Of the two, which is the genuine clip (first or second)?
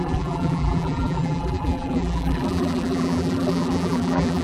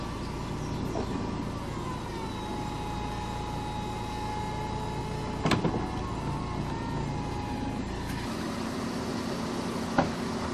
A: second